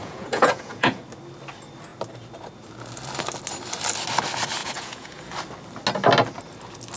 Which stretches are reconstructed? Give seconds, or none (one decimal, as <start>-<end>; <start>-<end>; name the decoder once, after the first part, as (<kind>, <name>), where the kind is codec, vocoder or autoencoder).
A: 0.0-1.0 (vocoder, Vocos); 4.6-5.2